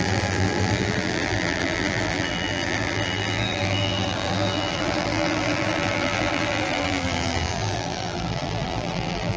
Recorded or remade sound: remade